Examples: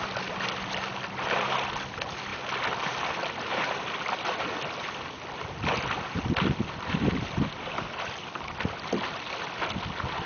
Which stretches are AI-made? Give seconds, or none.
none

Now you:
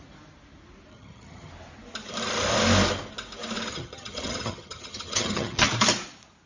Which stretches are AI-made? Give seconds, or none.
0.9-1.5; 3.7-5.7

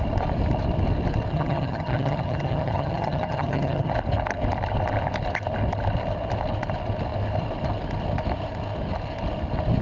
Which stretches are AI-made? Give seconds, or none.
1.3-3.9